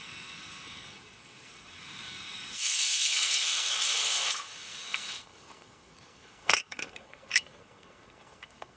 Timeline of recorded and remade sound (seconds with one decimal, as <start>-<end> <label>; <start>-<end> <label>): 0.0-8.8 remade